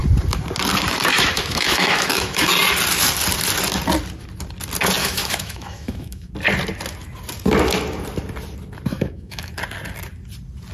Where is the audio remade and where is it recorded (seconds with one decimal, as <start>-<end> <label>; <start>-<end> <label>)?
0.0-1.1 recorded; 1.1-2.5 remade; 2.5-5.0 recorded; 5.0-6.3 remade; 6.3-8.9 recorded; 8.9-9.5 remade; 9.5-10.7 recorded